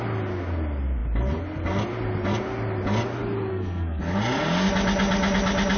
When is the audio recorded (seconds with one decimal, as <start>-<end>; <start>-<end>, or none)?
0.0-3.5; 4.0-5.8